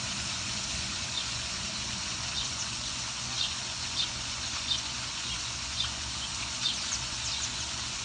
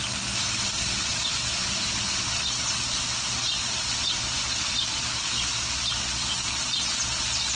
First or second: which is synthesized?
first